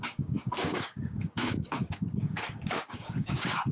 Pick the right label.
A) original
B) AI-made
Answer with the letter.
B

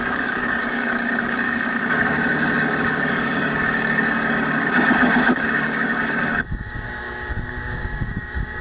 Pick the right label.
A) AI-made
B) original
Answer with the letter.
A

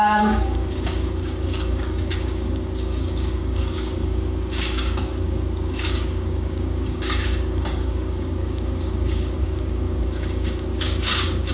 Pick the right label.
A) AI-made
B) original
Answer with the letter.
A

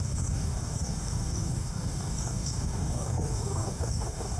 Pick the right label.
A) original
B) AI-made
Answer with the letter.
B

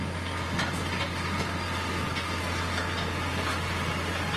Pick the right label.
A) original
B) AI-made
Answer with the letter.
A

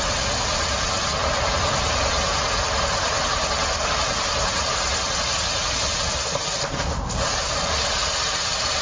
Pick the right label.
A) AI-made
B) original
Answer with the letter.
B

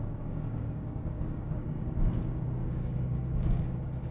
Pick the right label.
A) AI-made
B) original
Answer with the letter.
A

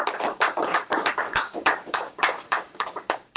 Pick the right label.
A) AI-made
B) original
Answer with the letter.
A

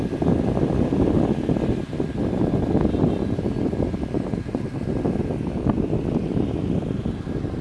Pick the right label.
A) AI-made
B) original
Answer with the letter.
B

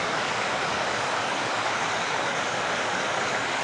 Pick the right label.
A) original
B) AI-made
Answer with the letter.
B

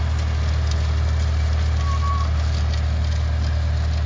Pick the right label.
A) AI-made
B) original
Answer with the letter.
B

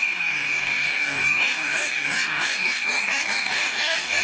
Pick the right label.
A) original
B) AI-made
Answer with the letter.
B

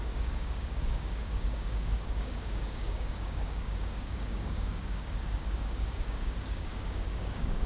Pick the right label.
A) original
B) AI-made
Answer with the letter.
B